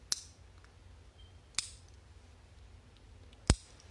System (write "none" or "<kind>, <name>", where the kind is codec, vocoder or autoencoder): none